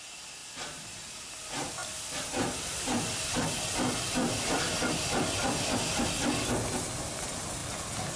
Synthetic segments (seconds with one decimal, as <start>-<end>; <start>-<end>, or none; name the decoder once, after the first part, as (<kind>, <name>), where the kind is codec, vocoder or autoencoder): 1.8-6.1 (vocoder, BigVGAN v2); 7.6-8.2